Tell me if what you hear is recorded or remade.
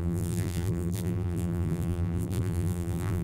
remade